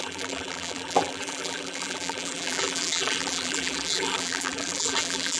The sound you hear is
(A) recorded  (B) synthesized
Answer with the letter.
B